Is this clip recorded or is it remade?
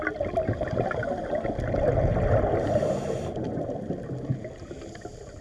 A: recorded